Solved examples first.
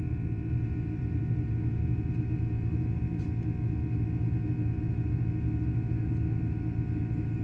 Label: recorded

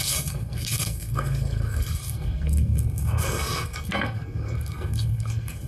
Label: remade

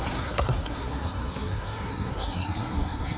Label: remade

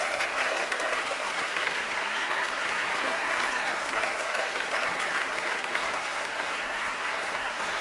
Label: remade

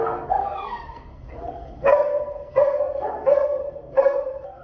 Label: remade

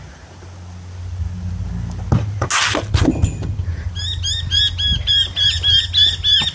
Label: recorded